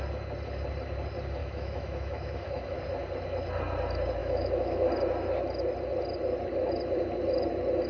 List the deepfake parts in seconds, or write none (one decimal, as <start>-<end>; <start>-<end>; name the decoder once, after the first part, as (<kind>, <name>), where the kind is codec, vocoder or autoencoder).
1.4-2.8 (autoencoder, DAC-VAE); 4.2-4.9